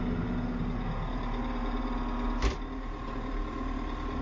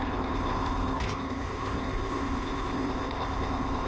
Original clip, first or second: first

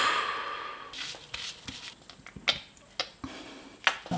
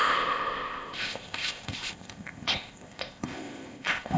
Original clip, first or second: first